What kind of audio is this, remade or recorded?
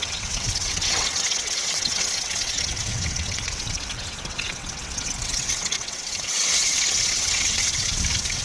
remade